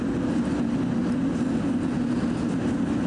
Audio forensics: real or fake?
real